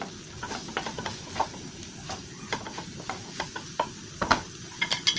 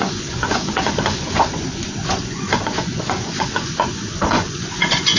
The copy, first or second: second